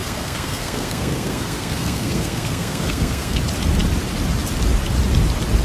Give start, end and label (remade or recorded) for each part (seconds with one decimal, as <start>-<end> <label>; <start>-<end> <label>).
0.0-3.4 remade; 3.4-5.6 recorded